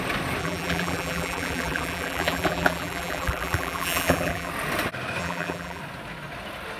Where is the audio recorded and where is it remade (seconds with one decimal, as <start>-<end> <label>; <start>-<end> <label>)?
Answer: 0.0-0.4 recorded; 0.4-4.5 remade; 4.5-5.2 recorded; 5.2-5.8 remade; 5.8-6.8 recorded